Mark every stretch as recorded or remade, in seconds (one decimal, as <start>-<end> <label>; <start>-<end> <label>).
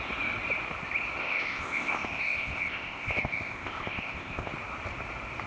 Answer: 0.0-1.2 recorded; 1.2-4.5 remade; 4.5-5.5 recorded